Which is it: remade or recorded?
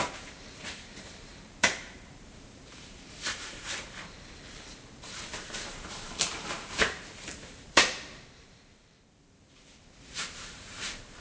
remade